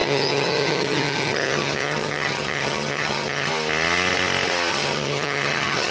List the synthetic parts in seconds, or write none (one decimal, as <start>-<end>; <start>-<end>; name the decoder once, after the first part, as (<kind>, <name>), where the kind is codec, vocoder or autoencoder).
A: 0.0-3.5 (vocoder, HiFi-GAN); 4.7-5.9